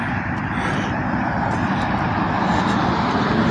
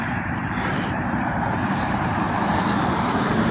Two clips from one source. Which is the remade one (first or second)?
second